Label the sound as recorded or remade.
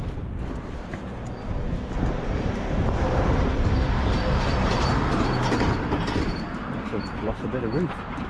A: remade